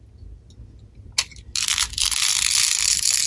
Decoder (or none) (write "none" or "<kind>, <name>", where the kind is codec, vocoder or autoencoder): none